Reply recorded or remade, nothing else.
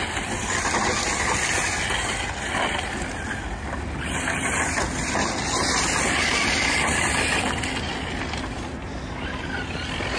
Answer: recorded